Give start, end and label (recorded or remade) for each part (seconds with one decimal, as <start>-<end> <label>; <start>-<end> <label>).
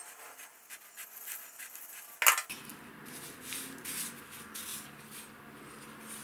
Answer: 0.0-6.2 recorded